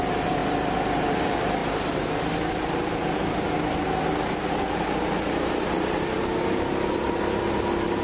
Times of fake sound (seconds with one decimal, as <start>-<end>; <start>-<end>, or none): none